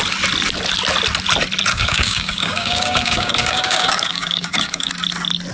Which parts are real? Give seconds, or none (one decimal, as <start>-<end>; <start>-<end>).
0.0-1.7; 4.9-5.5